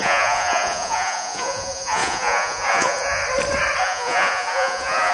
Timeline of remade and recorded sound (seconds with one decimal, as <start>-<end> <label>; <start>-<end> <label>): 0.0-3.2 remade; 3.2-3.8 recorded; 3.8-5.1 remade